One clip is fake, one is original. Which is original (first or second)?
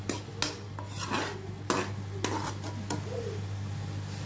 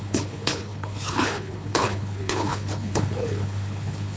first